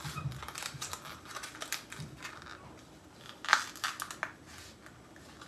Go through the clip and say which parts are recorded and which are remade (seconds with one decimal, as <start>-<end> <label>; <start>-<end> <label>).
0.0-5.5 recorded

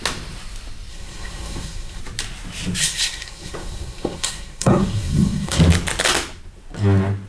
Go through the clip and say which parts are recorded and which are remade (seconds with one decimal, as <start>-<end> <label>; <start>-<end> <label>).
0.0-0.9 recorded; 0.9-2.0 remade; 2.0-2.8 recorded; 2.8-5.6 remade; 5.6-7.3 recorded

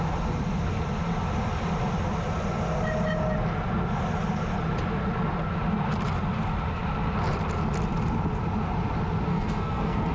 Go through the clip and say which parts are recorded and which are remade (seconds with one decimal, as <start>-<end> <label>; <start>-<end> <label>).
0.0-9.3 recorded; 9.3-10.1 remade

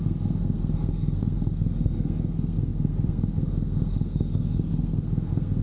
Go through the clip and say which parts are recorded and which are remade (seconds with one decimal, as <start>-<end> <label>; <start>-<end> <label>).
0.0-5.6 remade

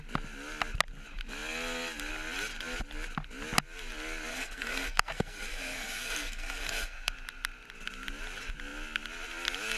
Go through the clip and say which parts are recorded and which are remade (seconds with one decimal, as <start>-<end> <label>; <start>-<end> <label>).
0.0-4.3 recorded; 4.3-7.1 remade; 7.1-9.8 recorded